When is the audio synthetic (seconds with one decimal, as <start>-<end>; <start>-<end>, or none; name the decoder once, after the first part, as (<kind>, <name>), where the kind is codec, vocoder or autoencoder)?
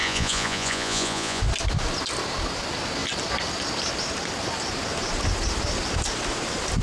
0.0-1.4 (vocoder, Vocos)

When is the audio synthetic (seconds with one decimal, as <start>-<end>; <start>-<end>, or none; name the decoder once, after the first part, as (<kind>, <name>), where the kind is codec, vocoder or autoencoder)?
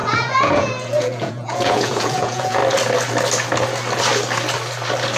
0.0-2.6 (vocoder, Vocos)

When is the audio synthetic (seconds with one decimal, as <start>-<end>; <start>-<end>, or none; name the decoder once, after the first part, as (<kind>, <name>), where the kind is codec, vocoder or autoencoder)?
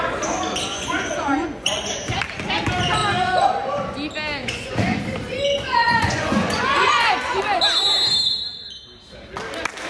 0.7-2.2 (vocoder, Vocos); 4.4-5.0; 5.8-7.4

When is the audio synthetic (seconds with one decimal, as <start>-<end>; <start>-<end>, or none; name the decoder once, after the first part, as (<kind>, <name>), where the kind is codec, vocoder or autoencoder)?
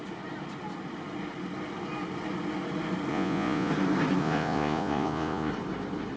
3.1-3.7 (vocoder, Vocos); 4.2-5.5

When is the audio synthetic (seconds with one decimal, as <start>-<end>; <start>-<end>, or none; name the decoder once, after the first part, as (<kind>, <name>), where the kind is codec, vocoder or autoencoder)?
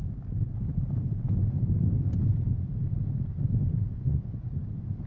3.9-4.4 (vocoder, Vocos)